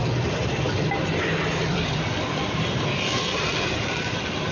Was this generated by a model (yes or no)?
yes